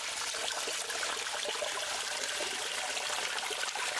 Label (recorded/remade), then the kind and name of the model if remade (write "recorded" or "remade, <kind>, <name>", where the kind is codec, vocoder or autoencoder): recorded